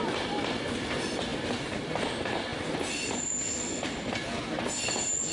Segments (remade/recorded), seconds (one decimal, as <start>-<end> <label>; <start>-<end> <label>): 0.0-5.3 recorded